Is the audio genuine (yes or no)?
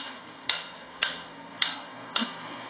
no